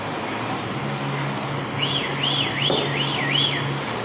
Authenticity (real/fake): real